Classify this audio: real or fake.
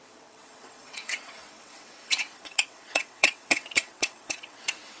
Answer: fake